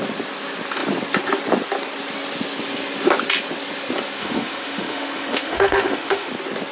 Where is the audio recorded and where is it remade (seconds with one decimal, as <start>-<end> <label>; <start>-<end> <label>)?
0.0-4.2 recorded; 4.2-6.3 remade; 6.3-6.7 recorded

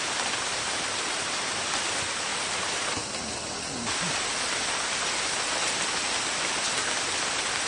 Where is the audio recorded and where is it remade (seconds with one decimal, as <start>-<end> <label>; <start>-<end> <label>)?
0.0-7.7 recorded

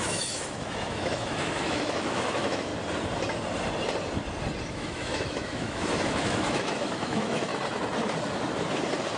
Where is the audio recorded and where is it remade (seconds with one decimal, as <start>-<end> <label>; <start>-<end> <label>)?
0.0-2.7 remade; 2.7-4.6 recorded; 4.6-7.5 remade; 7.5-9.2 recorded